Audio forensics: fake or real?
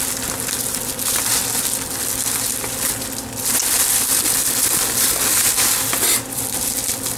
real